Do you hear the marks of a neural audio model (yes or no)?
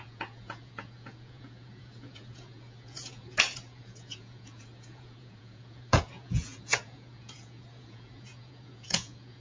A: yes